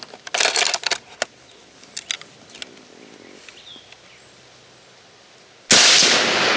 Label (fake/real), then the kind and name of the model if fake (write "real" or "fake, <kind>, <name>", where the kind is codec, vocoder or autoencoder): real